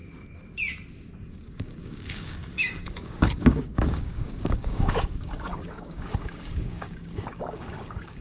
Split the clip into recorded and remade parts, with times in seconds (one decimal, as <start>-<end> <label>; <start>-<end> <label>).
0.0-1.3 recorded; 1.3-8.2 remade